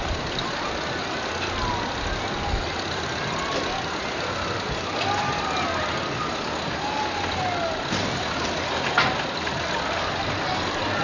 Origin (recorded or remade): recorded